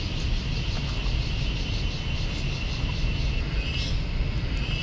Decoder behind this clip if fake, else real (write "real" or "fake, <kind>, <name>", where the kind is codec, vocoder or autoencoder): real